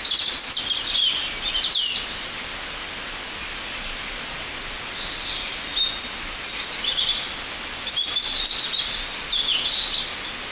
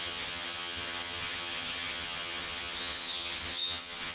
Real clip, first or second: first